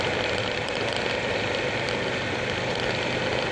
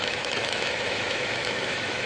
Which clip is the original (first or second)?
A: first